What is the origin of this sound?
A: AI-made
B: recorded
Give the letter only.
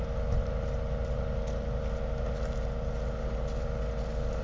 B